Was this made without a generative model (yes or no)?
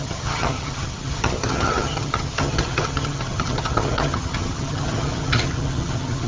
no